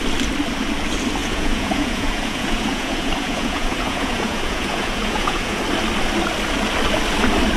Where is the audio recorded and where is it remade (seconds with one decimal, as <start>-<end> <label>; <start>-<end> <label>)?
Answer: 0.0-1.2 recorded; 1.2-5.6 remade; 5.6-7.6 recorded